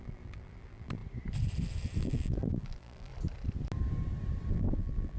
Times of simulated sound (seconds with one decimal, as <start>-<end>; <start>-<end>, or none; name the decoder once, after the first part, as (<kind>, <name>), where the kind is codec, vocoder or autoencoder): 0.0-1.0 (vocoder, BigVGAN v2); 2.0-3.1; 4.5-5.2